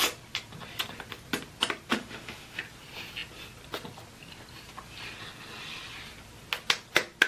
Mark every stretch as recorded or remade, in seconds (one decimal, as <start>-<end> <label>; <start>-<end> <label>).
0.0-1.9 recorded; 1.9-2.6 remade; 2.6-7.3 recorded